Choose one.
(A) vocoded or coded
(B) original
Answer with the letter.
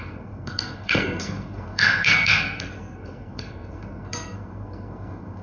A